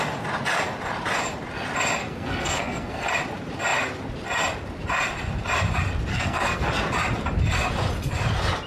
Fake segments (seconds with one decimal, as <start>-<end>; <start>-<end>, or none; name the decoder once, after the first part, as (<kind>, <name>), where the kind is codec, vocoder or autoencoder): 2.0-3.1 (codec, SNAC); 6.1-6.7